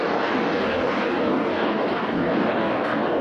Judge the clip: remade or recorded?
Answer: remade